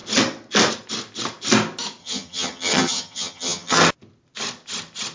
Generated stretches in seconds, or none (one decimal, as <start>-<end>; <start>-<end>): 2.0-3.8